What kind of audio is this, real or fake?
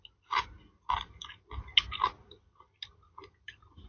real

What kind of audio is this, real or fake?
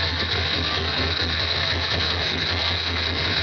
fake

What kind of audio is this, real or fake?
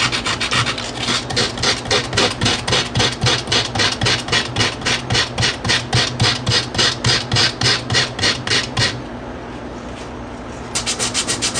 real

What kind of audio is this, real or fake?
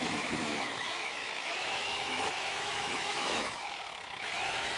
fake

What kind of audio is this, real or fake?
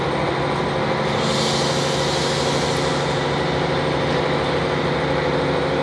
real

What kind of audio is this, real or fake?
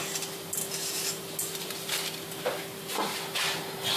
real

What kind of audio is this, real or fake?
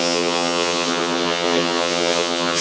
fake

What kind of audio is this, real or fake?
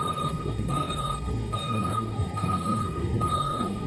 fake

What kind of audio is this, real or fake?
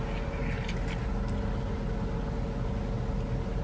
real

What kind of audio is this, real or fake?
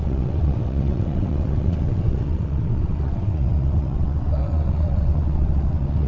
fake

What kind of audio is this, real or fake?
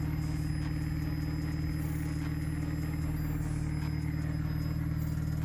real